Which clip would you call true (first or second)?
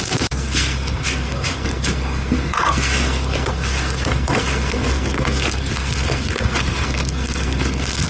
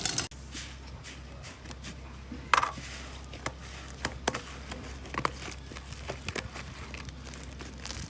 second